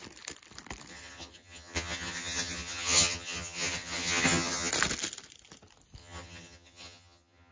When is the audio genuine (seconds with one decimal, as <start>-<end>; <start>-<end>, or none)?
0.0-0.9; 4.7-6.0